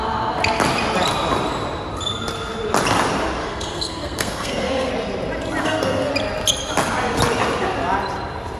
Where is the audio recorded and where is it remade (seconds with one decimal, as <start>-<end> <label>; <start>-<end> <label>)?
0.0-3.4 recorded; 3.4-4.9 remade; 4.9-5.6 recorded; 5.6-6.1 remade; 6.1-8.6 recorded